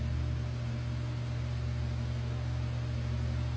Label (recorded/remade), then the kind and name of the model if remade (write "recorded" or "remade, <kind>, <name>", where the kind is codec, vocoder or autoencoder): recorded